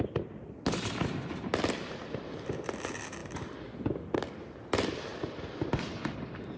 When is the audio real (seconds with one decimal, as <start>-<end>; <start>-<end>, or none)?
0.0-6.6